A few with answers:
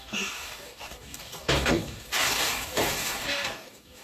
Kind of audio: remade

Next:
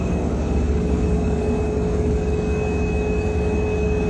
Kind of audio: remade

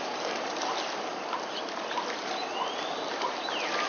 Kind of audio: recorded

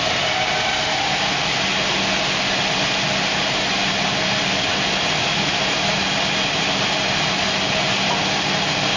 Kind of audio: recorded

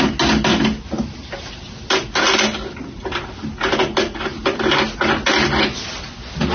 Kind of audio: recorded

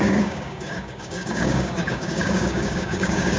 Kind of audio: remade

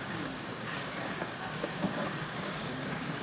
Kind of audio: remade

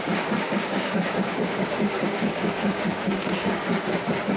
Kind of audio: remade